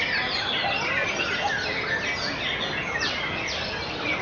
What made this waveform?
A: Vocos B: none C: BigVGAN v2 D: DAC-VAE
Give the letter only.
B